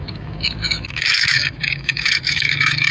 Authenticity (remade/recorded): remade